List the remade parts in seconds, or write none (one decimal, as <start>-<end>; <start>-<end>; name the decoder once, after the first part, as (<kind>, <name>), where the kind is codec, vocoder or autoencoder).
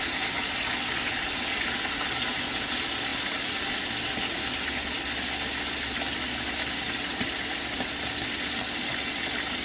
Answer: none